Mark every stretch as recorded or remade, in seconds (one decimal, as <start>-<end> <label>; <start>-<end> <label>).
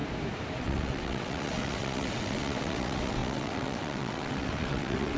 0.0-0.6 recorded; 0.6-5.2 remade